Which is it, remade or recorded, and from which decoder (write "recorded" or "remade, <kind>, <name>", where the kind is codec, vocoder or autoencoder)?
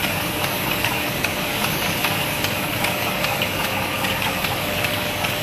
remade, codec, DAC